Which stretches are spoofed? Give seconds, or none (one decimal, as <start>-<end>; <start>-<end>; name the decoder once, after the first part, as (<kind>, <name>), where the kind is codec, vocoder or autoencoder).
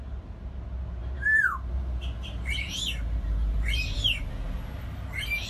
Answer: 1.0-4.3 (vocoder, BigVGAN v2)